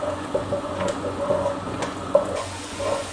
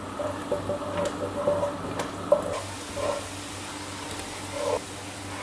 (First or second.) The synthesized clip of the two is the first